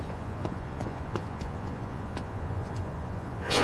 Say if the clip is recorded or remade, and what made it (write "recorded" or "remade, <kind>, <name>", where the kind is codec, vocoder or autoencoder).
remade, vocoder, Vocos